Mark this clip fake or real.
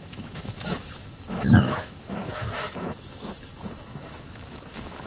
fake